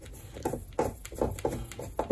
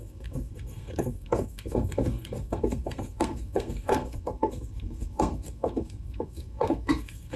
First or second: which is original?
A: first